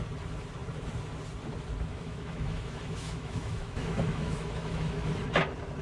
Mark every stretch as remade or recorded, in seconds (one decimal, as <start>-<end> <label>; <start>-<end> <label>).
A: 0.0-1.9 recorded; 1.9-4.9 remade; 4.9-5.8 recorded

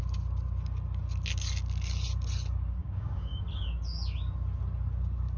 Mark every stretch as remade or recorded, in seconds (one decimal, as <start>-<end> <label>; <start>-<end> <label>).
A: 0.0-2.8 recorded; 2.8-3.4 remade; 3.4-5.4 recorded

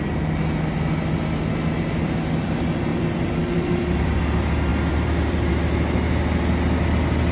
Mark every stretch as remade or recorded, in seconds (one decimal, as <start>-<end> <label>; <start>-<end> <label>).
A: 0.0-2.9 recorded; 2.9-4.2 remade; 4.2-4.7 recorded; 4.7-5.5 remade; 5.5-7.3 recorded

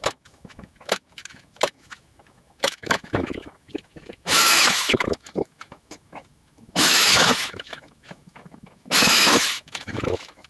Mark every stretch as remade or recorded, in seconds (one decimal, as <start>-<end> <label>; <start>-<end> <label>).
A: 0.0-10.5 remade

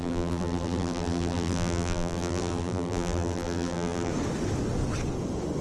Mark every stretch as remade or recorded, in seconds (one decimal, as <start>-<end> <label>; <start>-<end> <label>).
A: 0.0-4.1 remade; 4.1-5.6 recorded

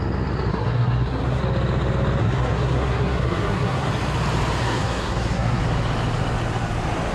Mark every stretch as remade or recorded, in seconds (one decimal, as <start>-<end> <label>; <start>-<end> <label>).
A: 0.0-0.5 recorded; 0.5-1.4 remade; 1.4-2.2 recorded; 2.2-3.9 remade; 3.9-4.6 recorded; 4.6-5.6 remade; 5.6-7.1 recorded

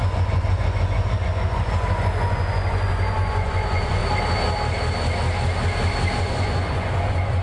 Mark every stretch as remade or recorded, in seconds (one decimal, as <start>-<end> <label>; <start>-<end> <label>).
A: 0.0-4.0 remade; 4.0-6.2 recorded; 6.2-7.4 remade

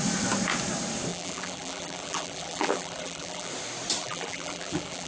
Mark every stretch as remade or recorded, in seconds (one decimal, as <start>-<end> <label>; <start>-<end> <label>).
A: 0.0-1.1 recorded; 1.1-3.5 remade; 3.5-4.0 recorded; 4.0-5.1 remade